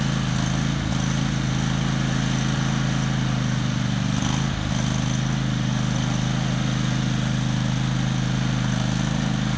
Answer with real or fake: real